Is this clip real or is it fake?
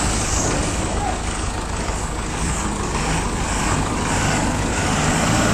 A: fake